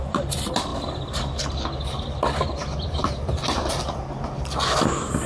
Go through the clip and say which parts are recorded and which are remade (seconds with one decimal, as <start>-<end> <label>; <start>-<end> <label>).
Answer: 0.0-5.3 recorded